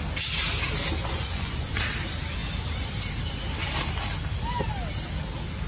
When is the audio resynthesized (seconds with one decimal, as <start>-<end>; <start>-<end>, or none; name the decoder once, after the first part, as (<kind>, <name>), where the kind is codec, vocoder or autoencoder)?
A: 1.0-1.8 (vocoder, Vocos)